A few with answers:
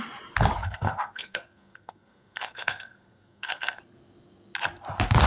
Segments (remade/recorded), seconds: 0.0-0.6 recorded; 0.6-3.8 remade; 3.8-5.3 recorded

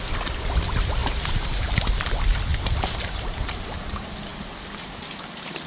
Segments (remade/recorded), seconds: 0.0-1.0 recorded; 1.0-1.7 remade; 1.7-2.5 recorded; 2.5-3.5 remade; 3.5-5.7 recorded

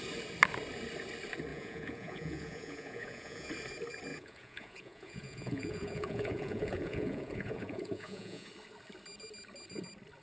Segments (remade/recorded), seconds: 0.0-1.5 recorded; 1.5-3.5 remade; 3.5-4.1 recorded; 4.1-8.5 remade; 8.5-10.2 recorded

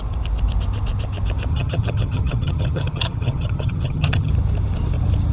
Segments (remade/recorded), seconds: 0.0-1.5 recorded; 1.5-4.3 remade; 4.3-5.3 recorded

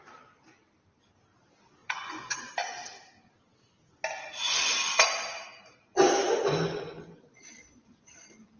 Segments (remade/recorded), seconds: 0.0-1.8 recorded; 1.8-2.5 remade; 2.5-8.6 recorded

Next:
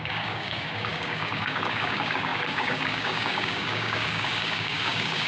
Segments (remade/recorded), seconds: 0.0-5.3 remade

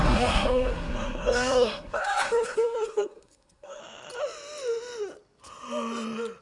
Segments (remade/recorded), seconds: 0.0-3.8 remade; 3.8-6.4 recorded